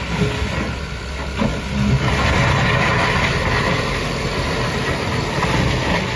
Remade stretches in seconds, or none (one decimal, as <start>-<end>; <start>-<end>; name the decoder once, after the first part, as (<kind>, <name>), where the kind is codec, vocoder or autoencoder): none